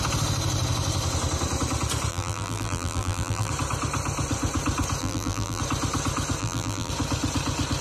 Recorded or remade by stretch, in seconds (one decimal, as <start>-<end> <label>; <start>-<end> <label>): 0.0-2.1 recorded; 2.1-3.5 remade; 3.5-5.0 recorded; 5.0-5.6 remade; 5.6-6.4 recorded; 6.4-6.9 remade; 6.9-7.8 recorded